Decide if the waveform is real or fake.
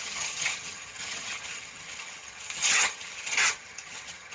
fake